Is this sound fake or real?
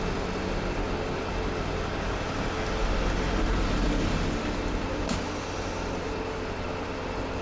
real